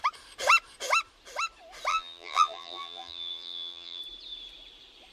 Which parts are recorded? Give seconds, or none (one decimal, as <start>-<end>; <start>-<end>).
0.0-1.9; 4.0-5.1